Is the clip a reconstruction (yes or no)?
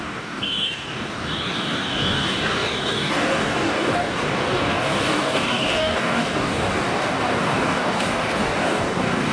yes